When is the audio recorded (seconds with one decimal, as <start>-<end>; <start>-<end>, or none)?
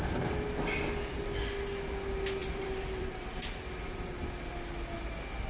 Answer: 0.0-2.4; 3.4-5.5